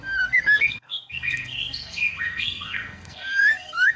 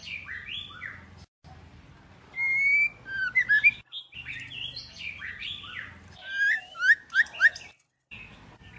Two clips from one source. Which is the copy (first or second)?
first